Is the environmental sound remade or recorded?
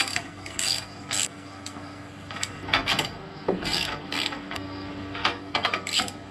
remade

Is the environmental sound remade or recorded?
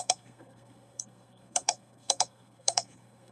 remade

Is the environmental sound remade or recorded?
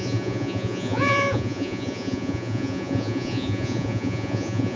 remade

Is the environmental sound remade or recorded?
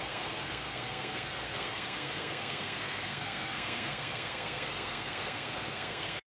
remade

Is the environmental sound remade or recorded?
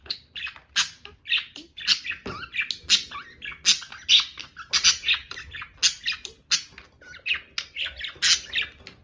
recorded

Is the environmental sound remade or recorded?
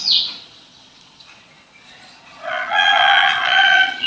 remade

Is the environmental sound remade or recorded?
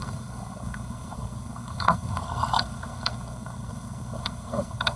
remade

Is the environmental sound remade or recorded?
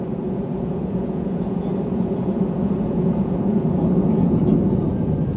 remade